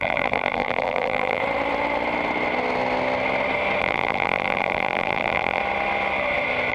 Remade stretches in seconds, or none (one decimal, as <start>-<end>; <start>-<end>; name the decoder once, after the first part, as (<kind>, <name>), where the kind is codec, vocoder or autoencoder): 0.0-1.4 (vocoder, BigVGAN v2); 3.8-5.6